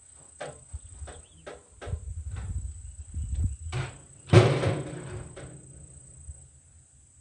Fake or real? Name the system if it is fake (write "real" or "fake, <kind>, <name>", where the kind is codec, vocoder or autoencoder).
real